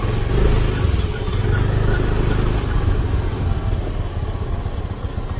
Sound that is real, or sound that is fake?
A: real